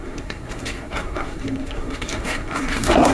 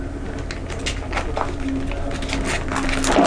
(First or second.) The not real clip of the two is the first